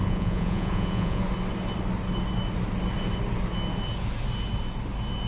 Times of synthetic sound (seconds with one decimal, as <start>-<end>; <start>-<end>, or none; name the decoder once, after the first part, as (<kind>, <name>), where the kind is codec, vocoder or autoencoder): 0.0-1.2 (vocoder, Vocos)